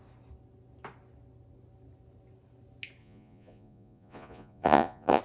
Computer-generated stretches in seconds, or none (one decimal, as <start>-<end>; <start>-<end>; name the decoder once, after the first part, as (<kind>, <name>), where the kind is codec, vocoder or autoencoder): 3.0-5.2 (vocoder, Vocos)

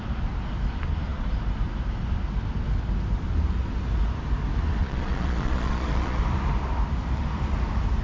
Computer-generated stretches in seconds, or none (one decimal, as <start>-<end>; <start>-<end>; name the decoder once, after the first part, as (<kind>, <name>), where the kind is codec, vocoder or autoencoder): 4.8-6.2 (vocoder, Vocos)

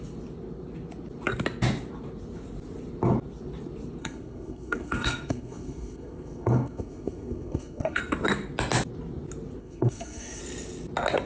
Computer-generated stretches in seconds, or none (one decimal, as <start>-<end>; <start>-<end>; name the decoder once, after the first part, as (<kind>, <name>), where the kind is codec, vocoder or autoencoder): 4.0-8.0 (codec, SNAC); 9.6-10.4

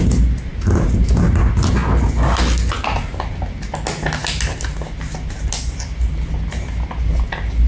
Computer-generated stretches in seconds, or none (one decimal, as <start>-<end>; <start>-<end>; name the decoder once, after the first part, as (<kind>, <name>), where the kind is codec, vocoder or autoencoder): 0.5-1.2 (vocoder, BigVGAN v2)

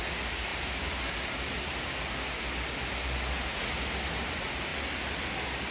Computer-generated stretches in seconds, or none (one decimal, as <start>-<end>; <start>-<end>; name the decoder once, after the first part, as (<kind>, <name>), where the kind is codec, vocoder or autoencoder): none

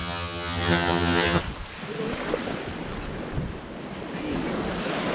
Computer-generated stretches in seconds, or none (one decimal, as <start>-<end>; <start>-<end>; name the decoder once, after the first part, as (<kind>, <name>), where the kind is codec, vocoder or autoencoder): 0.0-1.4 (vocoder, HiFi-GAN)

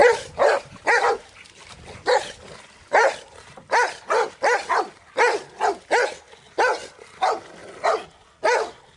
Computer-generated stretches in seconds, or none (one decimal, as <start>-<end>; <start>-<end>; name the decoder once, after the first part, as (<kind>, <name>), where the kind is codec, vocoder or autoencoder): 0.0-2.1 (vocoder, BigVGAN v2); 3.0-5.4